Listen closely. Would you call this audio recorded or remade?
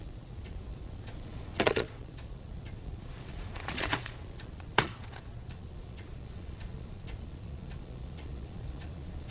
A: remade